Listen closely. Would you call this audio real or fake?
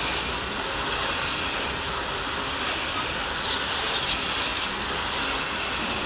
real